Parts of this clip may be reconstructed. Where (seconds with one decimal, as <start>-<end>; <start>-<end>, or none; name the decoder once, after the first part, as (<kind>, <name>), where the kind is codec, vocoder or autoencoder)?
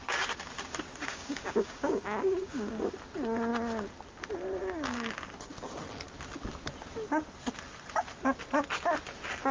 1.0-2.9 (codec, DAC); 4.6-5.3